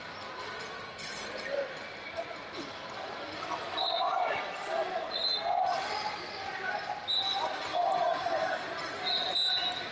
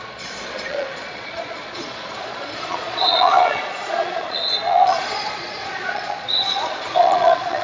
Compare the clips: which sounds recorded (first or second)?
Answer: first